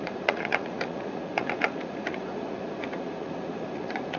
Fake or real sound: fake